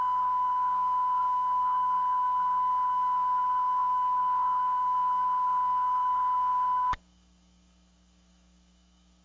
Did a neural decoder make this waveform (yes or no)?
yes